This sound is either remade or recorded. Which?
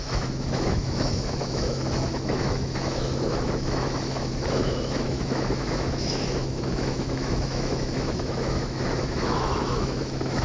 remade